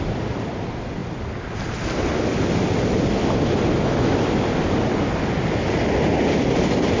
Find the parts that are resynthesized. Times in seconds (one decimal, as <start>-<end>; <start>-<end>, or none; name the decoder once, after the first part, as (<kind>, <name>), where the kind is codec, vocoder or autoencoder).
none

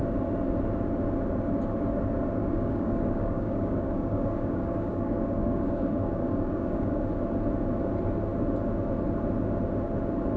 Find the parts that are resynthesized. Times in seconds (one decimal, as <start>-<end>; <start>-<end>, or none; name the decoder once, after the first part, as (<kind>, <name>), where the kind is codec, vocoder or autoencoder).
2.4-7.1 (codec, DAC)

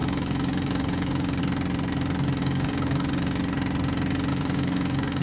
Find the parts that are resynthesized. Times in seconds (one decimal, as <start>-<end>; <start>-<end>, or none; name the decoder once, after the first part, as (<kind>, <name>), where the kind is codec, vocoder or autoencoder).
0.0-1.4 (codec, DAC); 2.4-3.4; 4.3-5.2

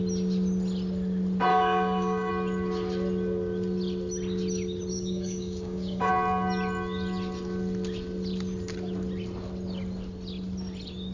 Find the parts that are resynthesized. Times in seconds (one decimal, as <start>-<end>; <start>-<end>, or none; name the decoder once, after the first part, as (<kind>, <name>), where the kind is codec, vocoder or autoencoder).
1.5-2.3 (codec, DAC); 4.9-6.1

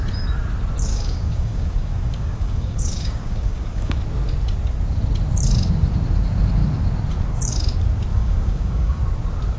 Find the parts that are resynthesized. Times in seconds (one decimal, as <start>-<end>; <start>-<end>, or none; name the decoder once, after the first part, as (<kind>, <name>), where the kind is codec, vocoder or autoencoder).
0.9-4.0 (codec, DAC); 8.1-9.0

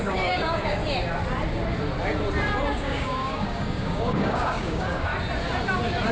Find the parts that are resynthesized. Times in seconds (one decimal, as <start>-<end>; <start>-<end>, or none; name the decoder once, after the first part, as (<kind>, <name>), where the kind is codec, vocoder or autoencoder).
0.0-0.8 (codec, DAC); 2.7-5.1